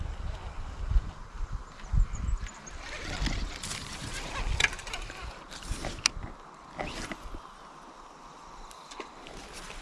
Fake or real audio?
real